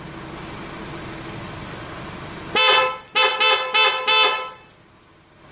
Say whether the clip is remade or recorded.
recorded